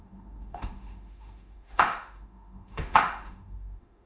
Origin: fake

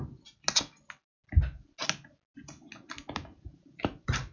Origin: real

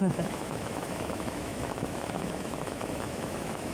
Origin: fake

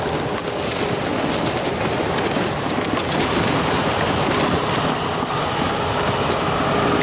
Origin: real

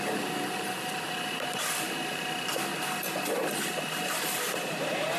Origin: fake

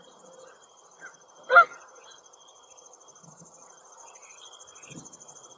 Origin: real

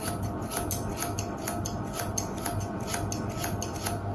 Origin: real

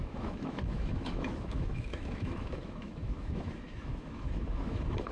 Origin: fake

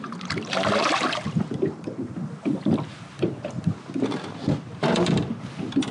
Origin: real